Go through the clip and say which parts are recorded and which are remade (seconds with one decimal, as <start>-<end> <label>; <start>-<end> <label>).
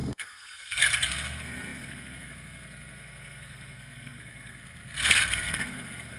0.0-6.2 remade